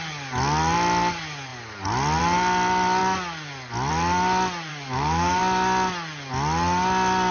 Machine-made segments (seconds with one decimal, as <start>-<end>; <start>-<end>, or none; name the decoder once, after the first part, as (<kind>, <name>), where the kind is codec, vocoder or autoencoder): 4.7-5.4 (codec, DAC)